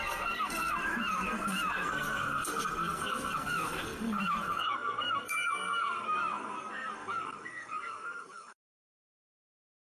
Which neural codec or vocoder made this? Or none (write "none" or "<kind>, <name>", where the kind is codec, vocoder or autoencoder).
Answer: codec, SNAC